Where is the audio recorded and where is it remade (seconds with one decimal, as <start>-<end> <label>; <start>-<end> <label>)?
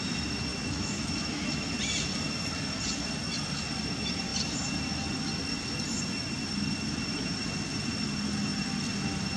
0.0-0.5 recorded; 0.5-1.7 remade; 1.7-9.4 recorded